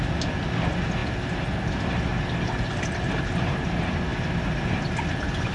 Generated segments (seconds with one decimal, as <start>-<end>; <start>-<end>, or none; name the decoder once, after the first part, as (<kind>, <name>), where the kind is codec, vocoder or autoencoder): none